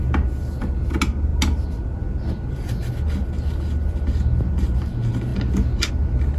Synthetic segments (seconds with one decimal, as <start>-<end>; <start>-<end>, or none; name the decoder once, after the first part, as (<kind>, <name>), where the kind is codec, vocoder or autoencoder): none